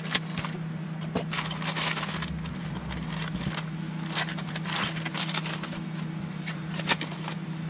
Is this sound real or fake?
real